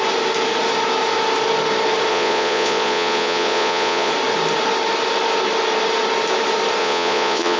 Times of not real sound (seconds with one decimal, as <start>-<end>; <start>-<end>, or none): 2.1-4.1; 6.8-7.6